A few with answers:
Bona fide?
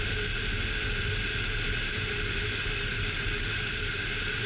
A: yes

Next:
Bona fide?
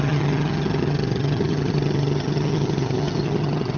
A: no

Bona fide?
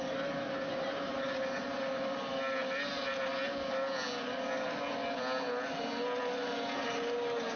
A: yes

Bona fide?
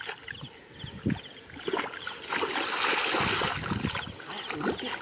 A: yes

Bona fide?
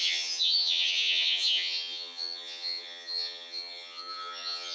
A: no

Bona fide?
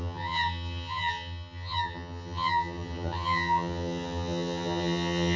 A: no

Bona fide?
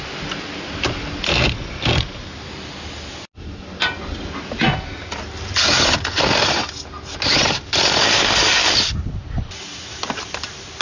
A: yes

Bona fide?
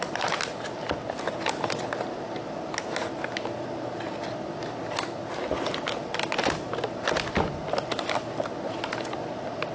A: yes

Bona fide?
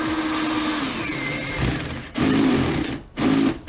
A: yes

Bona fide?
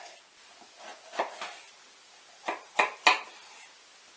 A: yes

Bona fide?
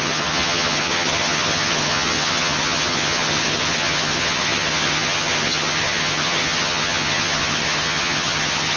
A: no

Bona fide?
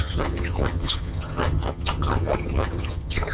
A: no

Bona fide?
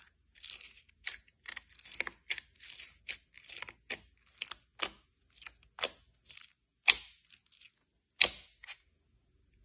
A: yes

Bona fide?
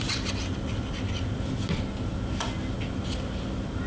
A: yes